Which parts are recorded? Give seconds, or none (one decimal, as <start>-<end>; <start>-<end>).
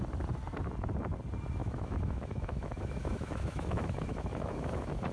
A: 0.0-1.6